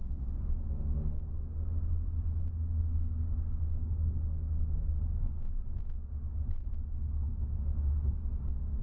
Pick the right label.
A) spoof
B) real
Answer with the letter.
B